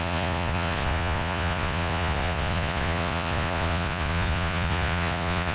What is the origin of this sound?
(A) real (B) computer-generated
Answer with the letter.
B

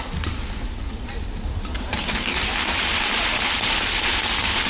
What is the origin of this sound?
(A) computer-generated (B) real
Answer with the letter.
B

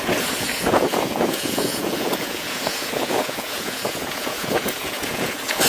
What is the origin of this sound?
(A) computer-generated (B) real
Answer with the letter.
A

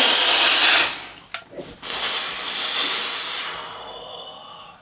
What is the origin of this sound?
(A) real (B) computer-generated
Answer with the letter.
A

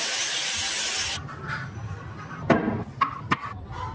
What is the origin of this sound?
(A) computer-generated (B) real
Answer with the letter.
B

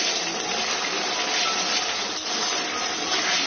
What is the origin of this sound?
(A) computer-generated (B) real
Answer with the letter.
B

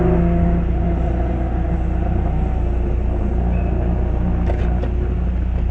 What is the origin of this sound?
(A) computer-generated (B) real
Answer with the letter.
B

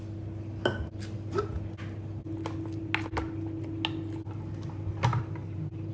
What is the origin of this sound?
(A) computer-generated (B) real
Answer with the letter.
B